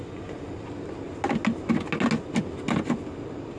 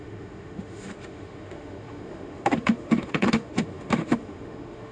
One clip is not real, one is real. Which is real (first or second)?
first